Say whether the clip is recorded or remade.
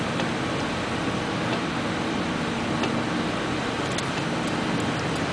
recorded